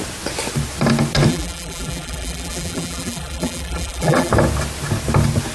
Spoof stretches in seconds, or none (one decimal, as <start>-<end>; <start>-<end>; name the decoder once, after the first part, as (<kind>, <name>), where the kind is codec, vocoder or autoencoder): 1.3-4.3 (vocoder, BigVGAN v2)